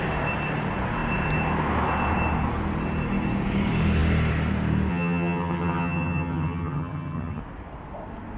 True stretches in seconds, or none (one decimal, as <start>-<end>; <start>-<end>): 0.0-4.9; 7.4-8.4